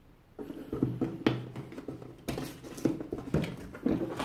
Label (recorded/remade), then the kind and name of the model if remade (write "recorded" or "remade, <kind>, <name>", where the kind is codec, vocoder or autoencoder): recorded